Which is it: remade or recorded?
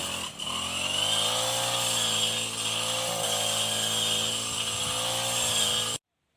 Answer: recorded